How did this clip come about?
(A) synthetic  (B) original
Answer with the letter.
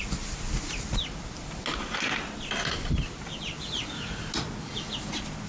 B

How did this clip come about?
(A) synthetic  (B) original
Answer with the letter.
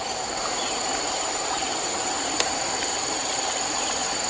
A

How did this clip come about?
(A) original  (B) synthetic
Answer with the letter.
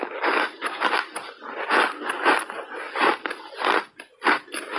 A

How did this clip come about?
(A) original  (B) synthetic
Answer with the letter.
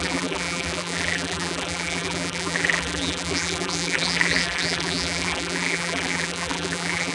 B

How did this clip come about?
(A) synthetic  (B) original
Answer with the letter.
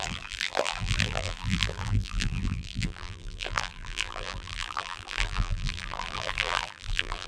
A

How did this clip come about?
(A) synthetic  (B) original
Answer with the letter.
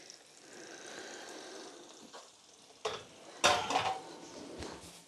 B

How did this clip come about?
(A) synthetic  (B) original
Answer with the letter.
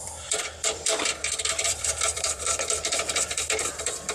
A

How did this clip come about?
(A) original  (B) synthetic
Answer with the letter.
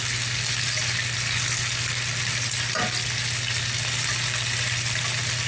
A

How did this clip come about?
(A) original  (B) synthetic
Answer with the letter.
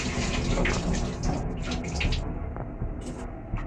A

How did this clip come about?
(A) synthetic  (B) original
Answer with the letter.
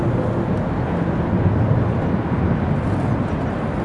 B